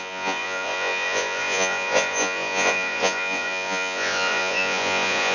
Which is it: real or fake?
fake